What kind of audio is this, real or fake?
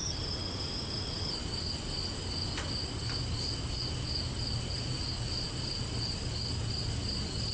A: real